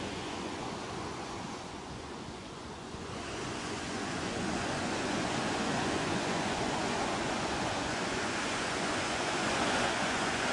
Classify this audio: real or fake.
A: fake